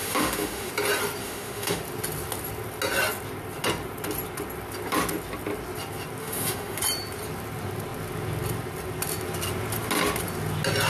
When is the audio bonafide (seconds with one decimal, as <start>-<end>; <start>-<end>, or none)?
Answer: 0.7-1.2; 1.8-6.2; 6.8-10.9